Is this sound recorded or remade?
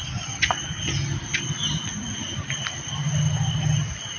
recorded